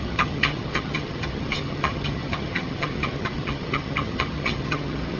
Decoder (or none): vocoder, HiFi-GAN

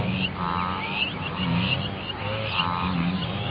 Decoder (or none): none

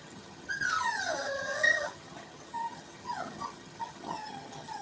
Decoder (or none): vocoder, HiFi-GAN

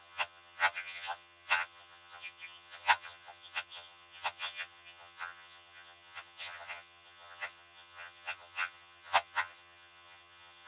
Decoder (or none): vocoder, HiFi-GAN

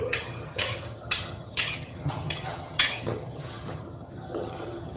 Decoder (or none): vocoder, HiFi-GAN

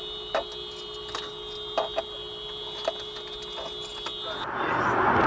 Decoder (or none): none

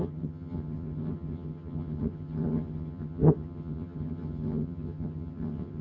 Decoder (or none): vocoder, HiFi-GAN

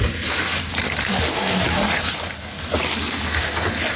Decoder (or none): none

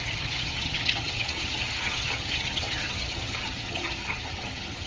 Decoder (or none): vocoder, HiFi-GAN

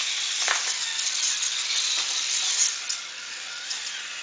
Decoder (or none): none